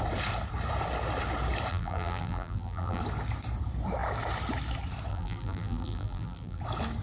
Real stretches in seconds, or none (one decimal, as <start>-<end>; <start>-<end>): 0.0-1.7; 3.0-5.1; 6.6-7.0